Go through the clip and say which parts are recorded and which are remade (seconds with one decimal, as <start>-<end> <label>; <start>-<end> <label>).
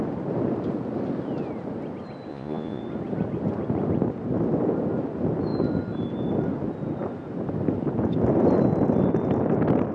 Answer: 0.0-2.3 recorded; 2.3-2.8 remade; 2.8-9.9 recorded